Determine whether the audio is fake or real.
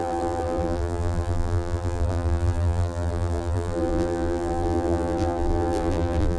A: fake